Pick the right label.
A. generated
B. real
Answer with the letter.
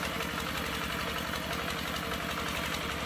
B